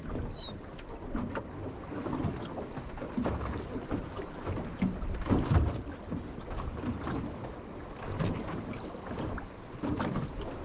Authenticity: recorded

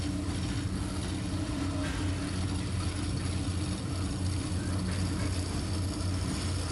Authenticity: recorded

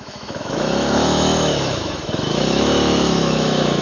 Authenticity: remade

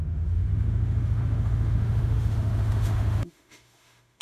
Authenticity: remade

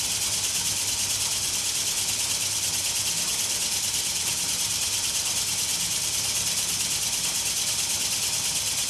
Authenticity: recorded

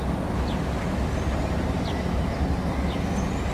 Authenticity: recorded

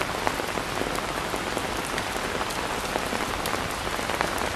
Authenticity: recorded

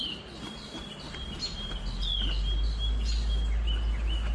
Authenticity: recorded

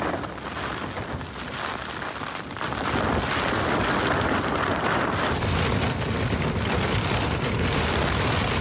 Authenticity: recorded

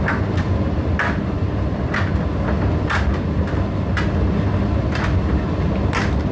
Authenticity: recorded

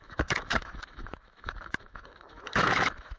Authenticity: remade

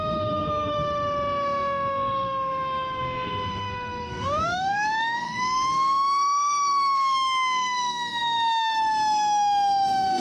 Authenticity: remade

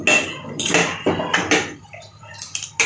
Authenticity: recorded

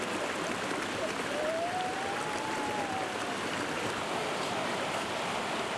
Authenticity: recorded